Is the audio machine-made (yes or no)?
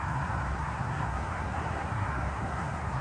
yes